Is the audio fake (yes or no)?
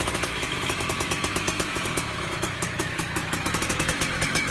yes